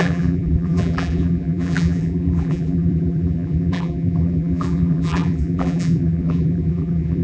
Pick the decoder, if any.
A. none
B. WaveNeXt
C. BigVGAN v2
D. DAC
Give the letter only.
C